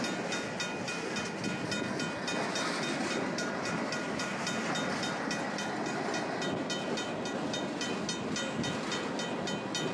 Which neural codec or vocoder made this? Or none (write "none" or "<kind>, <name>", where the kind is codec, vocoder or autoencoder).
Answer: none